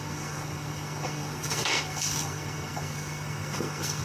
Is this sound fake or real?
fake